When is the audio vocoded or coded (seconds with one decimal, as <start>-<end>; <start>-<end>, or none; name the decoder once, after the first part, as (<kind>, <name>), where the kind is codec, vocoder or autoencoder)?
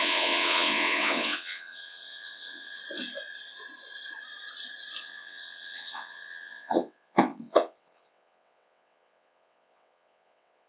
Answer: 0.0-2.8 (vocoder, WaveNeXt); 5.0-10.7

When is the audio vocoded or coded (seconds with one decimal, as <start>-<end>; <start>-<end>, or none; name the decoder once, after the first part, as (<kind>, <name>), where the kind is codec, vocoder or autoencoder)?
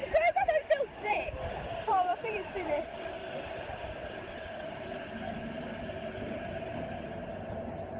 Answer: 0.0-1.1 (vocoder, BigVGAN v2); 2.1-2.7; 3.2-6.8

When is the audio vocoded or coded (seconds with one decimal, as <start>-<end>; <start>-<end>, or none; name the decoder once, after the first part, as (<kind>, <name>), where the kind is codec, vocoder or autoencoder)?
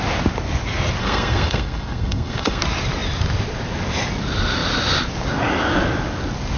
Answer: 1.0-2.6 (codec, SNAC)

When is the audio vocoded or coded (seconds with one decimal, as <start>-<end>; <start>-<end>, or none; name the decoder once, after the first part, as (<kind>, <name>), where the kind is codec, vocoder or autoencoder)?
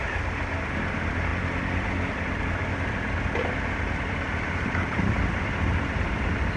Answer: none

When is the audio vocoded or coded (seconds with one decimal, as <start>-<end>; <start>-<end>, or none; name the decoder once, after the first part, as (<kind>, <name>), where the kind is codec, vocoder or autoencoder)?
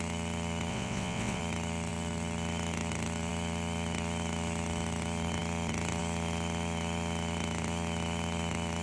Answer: 0.7-1.4 (vocoder, WaveNeXt)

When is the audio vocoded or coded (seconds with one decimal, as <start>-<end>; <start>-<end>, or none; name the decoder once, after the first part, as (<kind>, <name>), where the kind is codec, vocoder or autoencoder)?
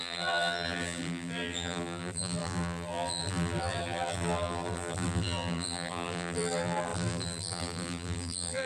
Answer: 0.0-8.7 (vocoder, BigVGAN v2)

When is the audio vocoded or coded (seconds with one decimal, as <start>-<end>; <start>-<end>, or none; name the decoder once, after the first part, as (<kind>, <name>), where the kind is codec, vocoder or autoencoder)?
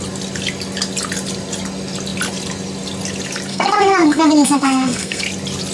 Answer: 3.5-5.2 (codec, SNAC)